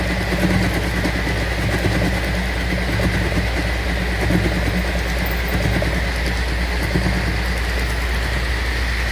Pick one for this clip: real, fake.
real